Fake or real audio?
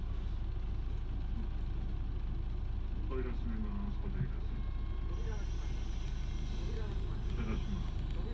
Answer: real